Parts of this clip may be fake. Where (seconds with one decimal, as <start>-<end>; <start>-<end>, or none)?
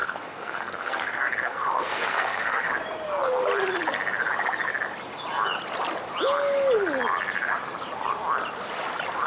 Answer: 0.0-2.7